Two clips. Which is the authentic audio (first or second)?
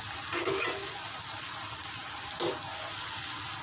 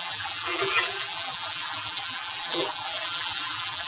first